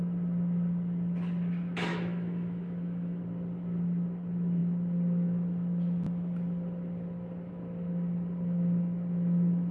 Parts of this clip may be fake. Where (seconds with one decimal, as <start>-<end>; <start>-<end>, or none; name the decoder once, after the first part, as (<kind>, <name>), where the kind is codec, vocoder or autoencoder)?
1.9-3.2 (autoencoder, DAC-VAE)